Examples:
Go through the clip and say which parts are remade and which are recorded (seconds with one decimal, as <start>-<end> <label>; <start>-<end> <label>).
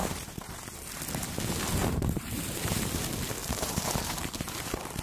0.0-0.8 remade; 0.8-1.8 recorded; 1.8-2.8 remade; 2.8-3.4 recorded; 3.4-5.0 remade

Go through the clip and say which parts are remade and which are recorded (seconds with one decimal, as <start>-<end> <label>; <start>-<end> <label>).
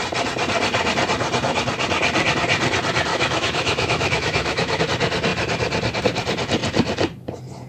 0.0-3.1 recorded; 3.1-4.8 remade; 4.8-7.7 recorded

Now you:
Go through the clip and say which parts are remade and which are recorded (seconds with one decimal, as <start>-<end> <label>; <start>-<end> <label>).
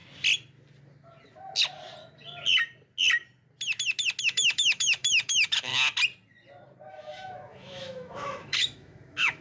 0.0-4.2 recorded; 4.2-5.7 remade; 5.7-6.9 recorded; 6.9-9.4 remade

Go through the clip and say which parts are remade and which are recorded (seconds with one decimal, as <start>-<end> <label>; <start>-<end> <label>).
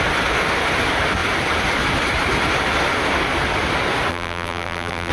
0.0-4.1 recorded; 4.1-5.1 remade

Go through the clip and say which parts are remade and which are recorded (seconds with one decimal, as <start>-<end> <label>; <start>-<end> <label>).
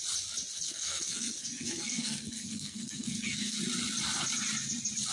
0.0-0.5 recorded; 0.5-3.6 remade; 3.6-5.1 recorded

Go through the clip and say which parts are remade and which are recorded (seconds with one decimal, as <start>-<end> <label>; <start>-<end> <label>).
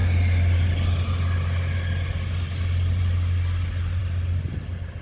0.0-5.0 recorded